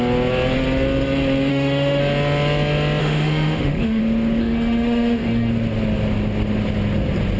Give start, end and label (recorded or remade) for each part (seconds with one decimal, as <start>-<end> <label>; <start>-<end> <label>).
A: 0.0-1.5 recorded; 1.5-2.0 remade; 2.0-3.0 recorded; 3.0-4.0 remade; 4.0-4.4 recorded; 4.4-5.5 remade; 5.5-7.4 recorded